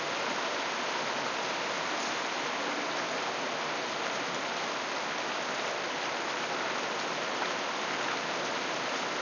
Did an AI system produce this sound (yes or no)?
no